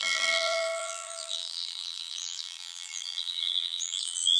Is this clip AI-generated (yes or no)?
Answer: yes